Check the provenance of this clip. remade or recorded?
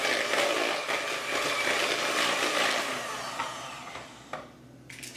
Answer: recorded